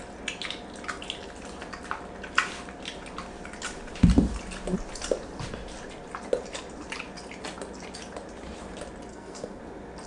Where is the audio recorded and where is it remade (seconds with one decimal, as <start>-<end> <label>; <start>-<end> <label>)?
0.0-9.1 recorded; 9.1-9.6 remade; 9.6-10.1 recorded